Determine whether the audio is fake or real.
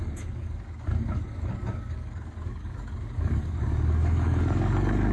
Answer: fake